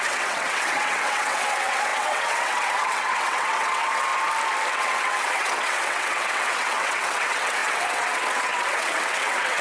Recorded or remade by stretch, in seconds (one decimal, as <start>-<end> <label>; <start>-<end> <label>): 0.0-4.1 remade; 4.1-4.7 recorded; 4.7-9.6 remade